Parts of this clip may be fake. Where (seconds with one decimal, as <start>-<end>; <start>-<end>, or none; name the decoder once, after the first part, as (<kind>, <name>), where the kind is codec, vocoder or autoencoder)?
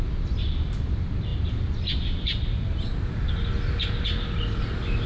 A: none